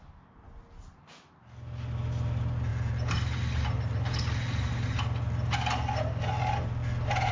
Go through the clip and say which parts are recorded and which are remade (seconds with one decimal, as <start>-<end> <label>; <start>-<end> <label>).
0.0-7.3 recorded